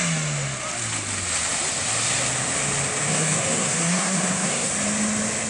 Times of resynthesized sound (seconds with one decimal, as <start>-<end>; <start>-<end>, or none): 3.1-4.7